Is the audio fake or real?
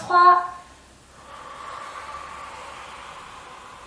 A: real